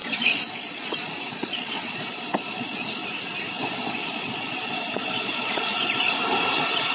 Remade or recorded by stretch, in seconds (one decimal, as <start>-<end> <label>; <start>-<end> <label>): 0.0-3.0 remade; 3.0-3.6 recorded; 3.6-5.7 remade; 5.7-6.9 recorded

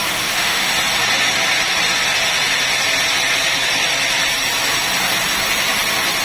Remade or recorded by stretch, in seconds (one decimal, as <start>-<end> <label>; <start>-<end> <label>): 0.0-0.7 remade; 0.7-6.2 recorded

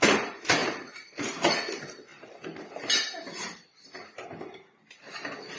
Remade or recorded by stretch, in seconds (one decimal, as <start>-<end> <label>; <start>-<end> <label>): 0.0-5.6 recorded

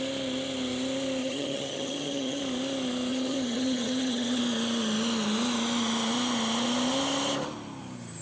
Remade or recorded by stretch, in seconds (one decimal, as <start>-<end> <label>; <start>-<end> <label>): 0.0-1.2 recorded; 1.2-2.4 remade; 2.4-3.1 recorded; 3.1-4.4 remade; 4.4-8.2 recorded

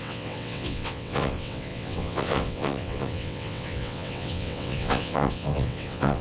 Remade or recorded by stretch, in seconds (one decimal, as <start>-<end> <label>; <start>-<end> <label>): 0.0-6.2 remade

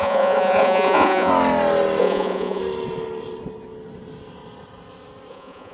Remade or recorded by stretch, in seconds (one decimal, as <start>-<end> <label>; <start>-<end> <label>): 0.0-1.3 remade; 1.3-2.0 recorded; 2.0-2.6 remade; 2.6-5.3 recorded; 5.3-5.7 remade